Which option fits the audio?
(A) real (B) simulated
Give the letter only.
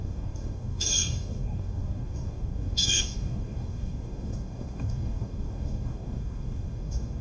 B